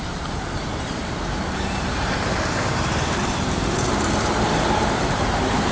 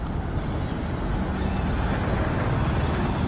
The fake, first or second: first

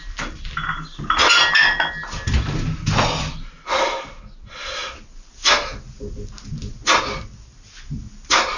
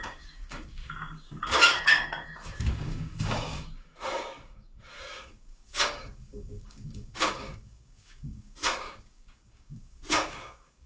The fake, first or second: second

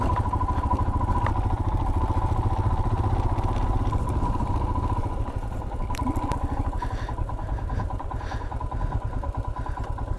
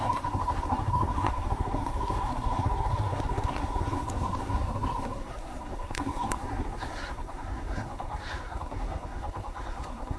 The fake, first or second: second